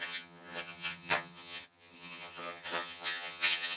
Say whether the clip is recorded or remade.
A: remade